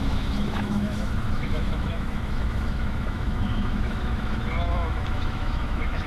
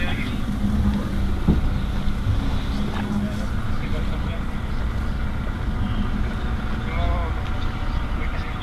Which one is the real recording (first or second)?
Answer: second